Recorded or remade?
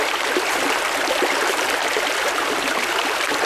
recorded